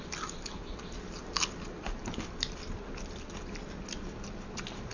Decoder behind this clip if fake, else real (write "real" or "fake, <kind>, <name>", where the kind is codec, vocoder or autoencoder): real